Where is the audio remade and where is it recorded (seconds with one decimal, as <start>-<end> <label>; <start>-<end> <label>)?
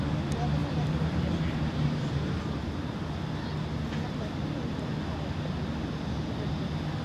0.0-0.6 recorded; 0.6-3.1 remade; 3.1-7.0 recorded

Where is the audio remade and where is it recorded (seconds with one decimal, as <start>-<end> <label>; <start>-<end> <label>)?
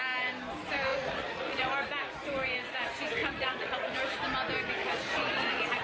0.0-0.9 recorded; 0.9-1.7 remade; 1.7-3.2 recorded; 3.2-4.0 remade; 4.0-4.8 recorded; 4.8-5.8 remade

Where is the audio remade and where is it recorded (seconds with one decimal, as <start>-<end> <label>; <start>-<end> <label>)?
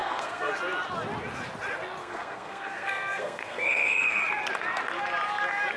0.0-0.5 remade; 0.5-2.0 recorded; 2.0-4.2 remade; 4.2-5.8 recorded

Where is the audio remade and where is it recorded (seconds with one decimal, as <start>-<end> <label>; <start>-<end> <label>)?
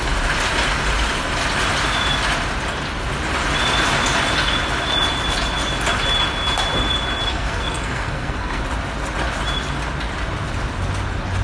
0.0-7.3 recorded; 7.3-8.6 remade; 8.6-11.4 recorded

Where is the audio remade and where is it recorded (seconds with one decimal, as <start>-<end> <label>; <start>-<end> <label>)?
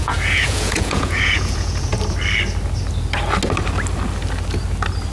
0.0-1.9 remade; 1.9-5.1 recorded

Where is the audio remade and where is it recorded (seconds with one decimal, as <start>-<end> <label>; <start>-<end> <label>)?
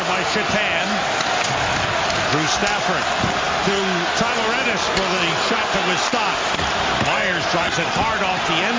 0.0-8.8 recorded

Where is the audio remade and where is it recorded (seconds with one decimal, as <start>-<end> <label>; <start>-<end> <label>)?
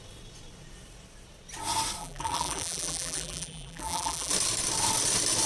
0.0-2.0 recorded; 2.0-4.3 remade; 4.3-5.5 recorded